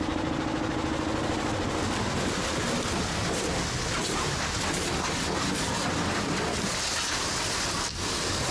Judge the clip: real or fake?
real